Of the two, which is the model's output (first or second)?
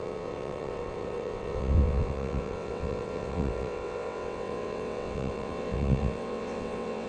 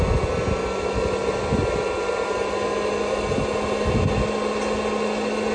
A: first